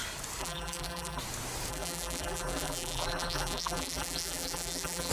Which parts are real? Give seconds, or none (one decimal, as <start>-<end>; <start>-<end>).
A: 0.0-0.4; 1.2-1.7